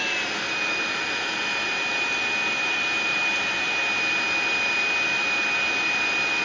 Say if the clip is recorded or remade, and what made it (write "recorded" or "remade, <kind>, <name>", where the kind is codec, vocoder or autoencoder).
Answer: recorded